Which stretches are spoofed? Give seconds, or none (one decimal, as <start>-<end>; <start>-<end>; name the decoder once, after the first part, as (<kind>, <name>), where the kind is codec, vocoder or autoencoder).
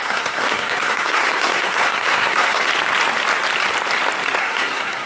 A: 0.0-2.7 (codec, SNAC); 4.4-5.1